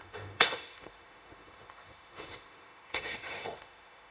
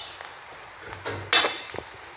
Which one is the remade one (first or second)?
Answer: first